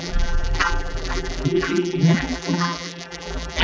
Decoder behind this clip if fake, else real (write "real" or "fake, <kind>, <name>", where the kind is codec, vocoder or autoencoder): fake, vocoder, BigVGAN v2